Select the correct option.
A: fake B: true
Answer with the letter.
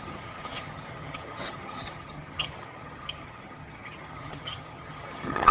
A